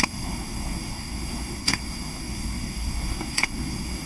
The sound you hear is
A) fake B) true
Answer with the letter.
A